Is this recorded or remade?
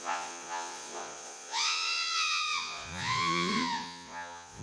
remade